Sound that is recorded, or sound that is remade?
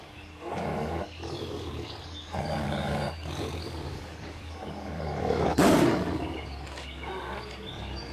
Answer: remade